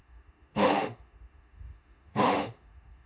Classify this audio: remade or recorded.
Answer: remade